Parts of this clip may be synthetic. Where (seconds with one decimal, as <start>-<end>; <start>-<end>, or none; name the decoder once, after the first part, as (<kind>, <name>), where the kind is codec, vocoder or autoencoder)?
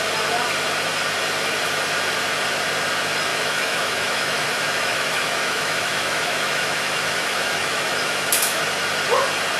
3.3-8.6 (autoencoder, DAC-VAE)